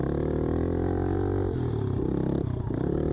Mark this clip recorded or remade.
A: recorded